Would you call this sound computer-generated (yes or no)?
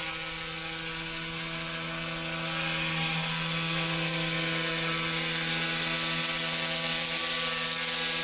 no